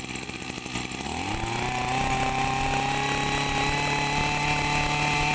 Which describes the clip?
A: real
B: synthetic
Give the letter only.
A